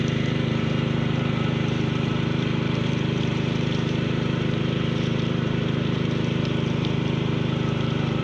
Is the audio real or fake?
fake